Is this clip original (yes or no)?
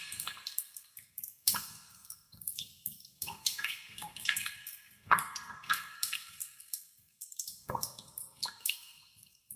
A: no